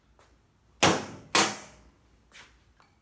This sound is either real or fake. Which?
real